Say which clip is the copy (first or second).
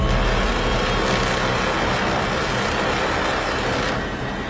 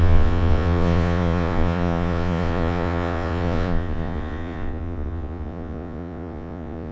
second